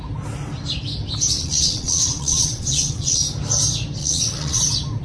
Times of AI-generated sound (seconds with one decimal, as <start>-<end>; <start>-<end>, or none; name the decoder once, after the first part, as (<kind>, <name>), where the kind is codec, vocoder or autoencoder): 1.4-3.2 (vocoder, WaveNeXt); 4.0-4.6